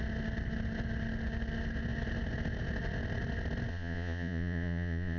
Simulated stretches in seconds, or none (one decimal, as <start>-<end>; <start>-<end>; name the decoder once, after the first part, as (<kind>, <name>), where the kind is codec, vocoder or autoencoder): 3.7-5.2 (vocoder, Vocos)

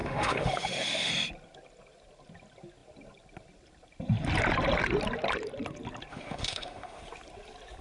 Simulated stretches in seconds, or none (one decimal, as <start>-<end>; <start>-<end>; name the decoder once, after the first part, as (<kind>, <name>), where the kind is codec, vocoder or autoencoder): 0.0-1.1 (autoencoder, DAC-VAE); 6.1-7.0